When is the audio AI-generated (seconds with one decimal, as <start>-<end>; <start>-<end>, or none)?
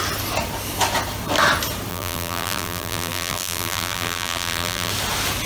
1.9-4.9